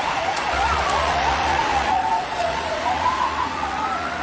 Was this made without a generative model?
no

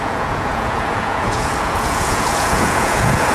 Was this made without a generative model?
no